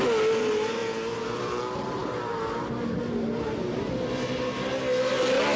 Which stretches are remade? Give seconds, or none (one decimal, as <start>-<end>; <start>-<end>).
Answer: none